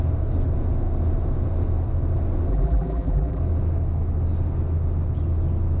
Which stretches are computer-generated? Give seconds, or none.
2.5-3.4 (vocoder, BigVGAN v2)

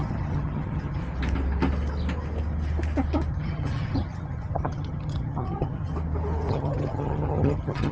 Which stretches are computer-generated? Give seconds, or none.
0.0-1.0 (vocoder, HiFi-GAN); 3.3-5.9; 6.5-7.9

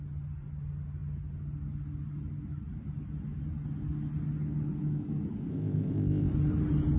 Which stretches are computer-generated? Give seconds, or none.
5.5-6.3 (codec, ZipCodec)

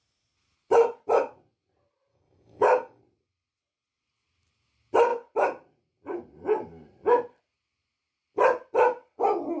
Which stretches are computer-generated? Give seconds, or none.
2.1-3.0 (codec, DAC)

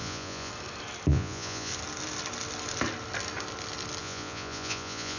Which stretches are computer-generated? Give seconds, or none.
0.0-0.5 (vocoder, Vocos); 1.1-1.7; 4.0-5.2